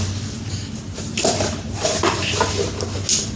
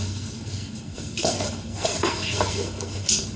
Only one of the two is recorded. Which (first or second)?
first